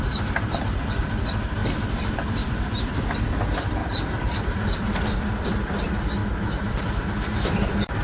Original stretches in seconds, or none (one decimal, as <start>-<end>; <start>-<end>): 6.2-6.7